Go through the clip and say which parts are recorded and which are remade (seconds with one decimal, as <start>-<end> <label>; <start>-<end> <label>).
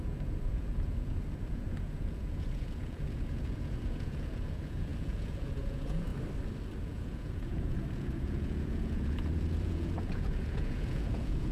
0.0-6.1 remade; 6.1-6.8 recorded; 6.8-11.5 remade